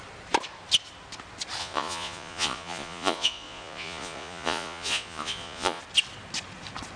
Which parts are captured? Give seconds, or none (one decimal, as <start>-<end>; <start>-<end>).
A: 0.0-1.6; 5.8-7.0